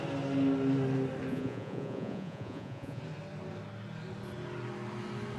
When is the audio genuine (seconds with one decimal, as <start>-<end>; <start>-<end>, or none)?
0.0-1.3; 3.0-5.4